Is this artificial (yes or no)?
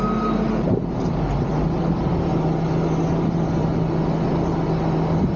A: no